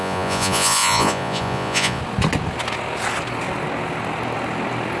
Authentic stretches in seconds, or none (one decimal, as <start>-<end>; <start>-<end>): 2.0-5.0